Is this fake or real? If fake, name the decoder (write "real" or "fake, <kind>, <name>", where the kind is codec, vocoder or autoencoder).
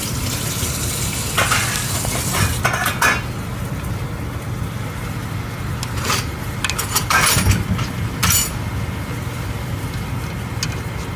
real